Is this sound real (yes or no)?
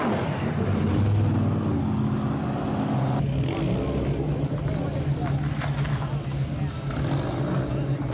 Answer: yes